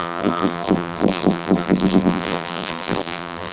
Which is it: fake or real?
fake